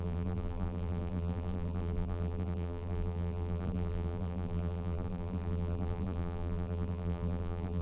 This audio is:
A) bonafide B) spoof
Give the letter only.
B